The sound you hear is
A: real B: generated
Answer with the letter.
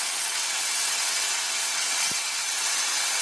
B